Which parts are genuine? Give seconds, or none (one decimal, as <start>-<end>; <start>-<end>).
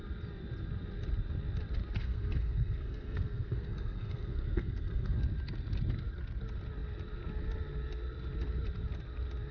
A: 0.0-2.0; 5.2-9.5